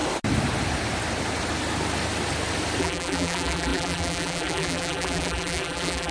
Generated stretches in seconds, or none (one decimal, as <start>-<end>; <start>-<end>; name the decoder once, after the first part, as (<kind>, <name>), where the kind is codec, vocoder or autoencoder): 2.8-6.1 (vocoder, BigVGAN v2)

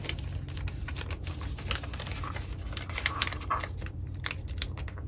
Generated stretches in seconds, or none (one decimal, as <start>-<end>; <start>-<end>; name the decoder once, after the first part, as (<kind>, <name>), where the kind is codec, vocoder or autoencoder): none

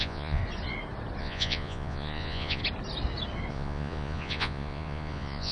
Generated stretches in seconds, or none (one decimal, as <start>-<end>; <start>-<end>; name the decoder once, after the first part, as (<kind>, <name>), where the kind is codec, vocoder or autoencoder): 0.0-0.4 (vocoder, Vocos); 1.2-2.6; 3.5-5.5

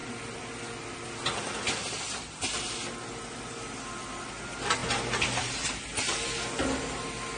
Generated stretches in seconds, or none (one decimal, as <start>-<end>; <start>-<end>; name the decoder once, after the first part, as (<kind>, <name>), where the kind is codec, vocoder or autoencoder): none

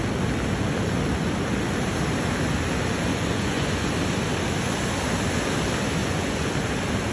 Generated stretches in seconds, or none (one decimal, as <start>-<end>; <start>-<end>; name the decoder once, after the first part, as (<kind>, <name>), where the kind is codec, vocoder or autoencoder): 3.1-3.9 (vocoder, Vocos); 6.0-6.5

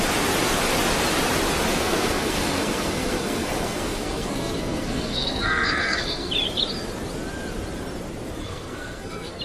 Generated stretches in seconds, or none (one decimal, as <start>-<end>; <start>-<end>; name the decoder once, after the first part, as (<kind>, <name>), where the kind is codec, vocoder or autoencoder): 1.7-6.3 (codec, SNAC); 8.4-9.4

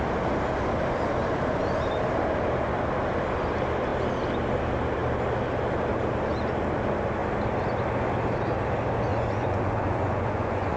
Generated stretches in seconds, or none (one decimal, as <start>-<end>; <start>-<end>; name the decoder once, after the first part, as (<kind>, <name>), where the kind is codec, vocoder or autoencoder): 9.1-10.8 (vocoder, Vocos)